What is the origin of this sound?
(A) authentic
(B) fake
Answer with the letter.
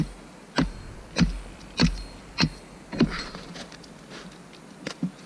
A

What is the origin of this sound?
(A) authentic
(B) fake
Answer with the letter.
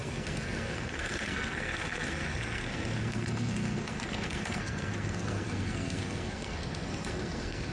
B